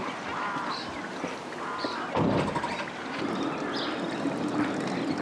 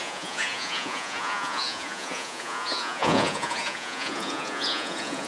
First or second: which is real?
first